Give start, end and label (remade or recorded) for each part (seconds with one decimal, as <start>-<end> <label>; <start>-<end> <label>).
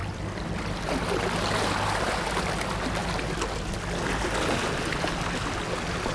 0.0-6.1 recorded